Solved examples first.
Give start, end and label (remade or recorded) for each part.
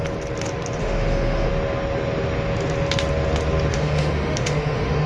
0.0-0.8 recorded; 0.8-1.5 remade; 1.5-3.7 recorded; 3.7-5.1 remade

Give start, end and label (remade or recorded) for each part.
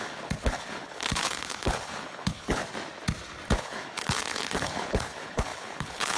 0.0-2.6 remade; 2.6-3.6 recorded; 3.6-6.2 remade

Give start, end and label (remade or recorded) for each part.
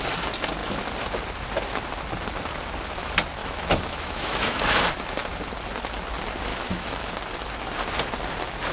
0.0-3.4 recorded; 3.4-4.6 remade; 4.6-6.5 recorded; 6.5-7.1 remade; 7.1-8.7 recorded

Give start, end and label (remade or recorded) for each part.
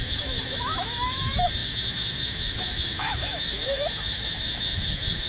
0.0-5.3 remade